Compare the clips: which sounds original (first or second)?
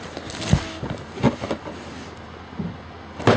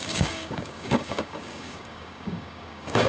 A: first